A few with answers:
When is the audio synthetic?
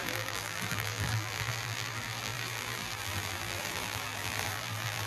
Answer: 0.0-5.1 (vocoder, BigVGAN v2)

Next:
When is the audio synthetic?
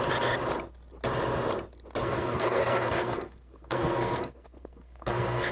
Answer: 2.0-5.5 (codec, SNAC)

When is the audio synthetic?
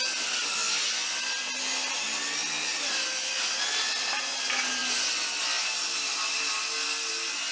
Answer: none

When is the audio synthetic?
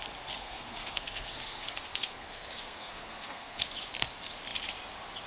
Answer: 0.4-3.6 (codec, SNAC)